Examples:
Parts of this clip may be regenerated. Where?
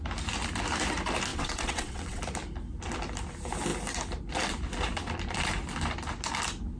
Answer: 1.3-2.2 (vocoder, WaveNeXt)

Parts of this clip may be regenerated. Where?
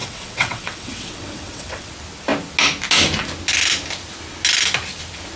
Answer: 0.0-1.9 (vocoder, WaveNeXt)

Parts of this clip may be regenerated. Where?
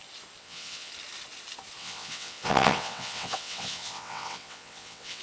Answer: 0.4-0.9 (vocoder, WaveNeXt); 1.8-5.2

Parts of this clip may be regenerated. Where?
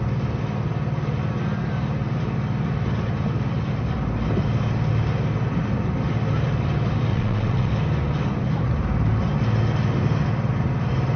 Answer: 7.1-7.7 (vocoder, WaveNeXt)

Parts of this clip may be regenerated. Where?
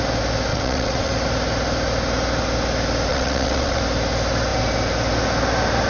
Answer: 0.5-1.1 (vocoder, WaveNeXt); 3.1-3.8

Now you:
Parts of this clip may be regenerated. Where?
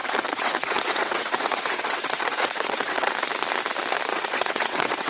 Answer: 0.0-3.1 (vocoder, WaveNeXt); 4.1-5.1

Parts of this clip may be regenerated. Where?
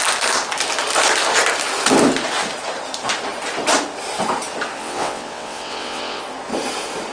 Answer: 4.8-6.2 (vocoder, WaveNeXt)